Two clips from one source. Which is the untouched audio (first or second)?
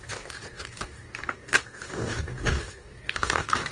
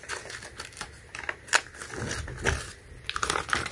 second